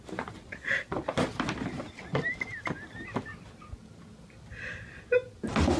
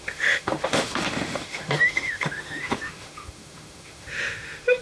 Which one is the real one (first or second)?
first